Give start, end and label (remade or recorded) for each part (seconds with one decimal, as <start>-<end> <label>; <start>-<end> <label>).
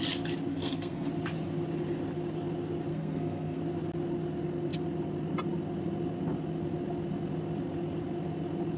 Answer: 0.0-0.5 recorded; 0.5-1.1 remade; 1.1-2.9 recorded; 2.9-3.6 remade; 3.6-8.8 recorded